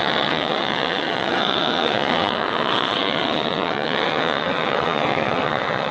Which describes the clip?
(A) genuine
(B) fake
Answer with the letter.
B